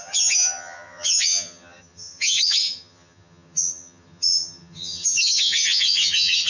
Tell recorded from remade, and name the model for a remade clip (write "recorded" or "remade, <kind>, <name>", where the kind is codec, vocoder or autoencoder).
remade, vocoder, HiFi-GAN